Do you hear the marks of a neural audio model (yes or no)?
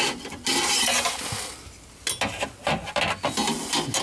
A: no